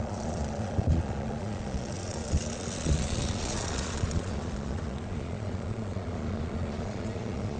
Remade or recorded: remade